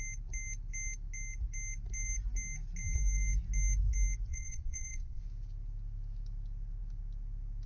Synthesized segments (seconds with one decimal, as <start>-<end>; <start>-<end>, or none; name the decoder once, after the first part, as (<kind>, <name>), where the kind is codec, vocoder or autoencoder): 4.3-5.2 (vocoder, Vocos)